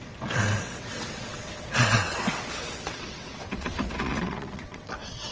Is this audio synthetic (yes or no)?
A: yes